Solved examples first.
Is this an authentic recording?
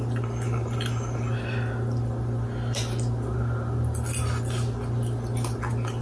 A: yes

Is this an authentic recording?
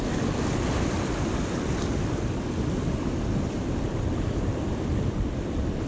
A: yes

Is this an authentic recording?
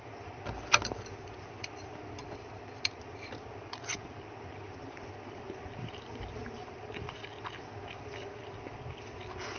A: yes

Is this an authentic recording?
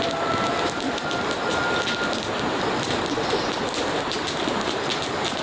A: yes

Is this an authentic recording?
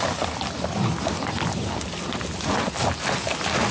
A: yes